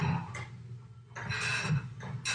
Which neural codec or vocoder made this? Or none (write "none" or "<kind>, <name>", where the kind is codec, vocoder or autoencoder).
none